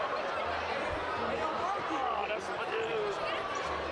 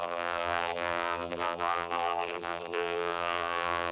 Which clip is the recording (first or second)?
first